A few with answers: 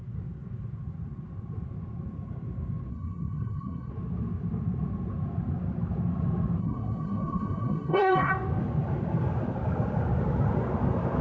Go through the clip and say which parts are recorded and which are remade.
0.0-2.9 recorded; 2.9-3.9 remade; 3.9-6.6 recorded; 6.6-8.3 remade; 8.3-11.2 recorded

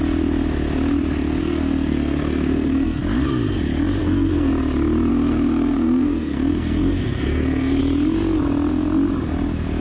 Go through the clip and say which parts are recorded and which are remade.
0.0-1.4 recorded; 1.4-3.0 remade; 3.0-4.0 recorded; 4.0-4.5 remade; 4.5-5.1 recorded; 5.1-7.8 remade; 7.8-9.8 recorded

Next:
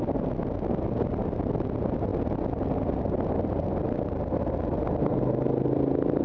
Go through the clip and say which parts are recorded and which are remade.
0.0-6.2 recorded

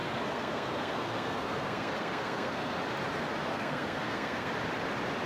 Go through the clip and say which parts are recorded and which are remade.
0.0-2.8 remade; 2.8-3.5 recorded; 3.5-4.5 remade; 4.5-5.3 recorded